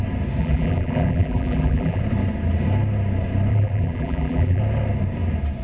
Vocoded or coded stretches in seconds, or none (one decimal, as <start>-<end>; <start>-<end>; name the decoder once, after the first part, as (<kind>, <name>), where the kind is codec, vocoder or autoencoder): 0.4-2.0 (vocoder, BigVGAN v2); 3.5-4.6